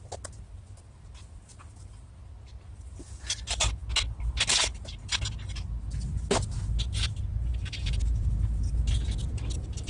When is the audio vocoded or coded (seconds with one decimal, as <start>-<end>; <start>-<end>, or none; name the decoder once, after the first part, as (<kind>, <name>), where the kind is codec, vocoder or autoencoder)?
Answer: none